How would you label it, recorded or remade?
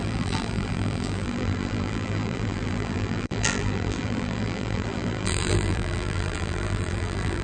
remade